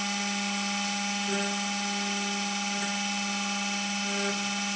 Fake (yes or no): no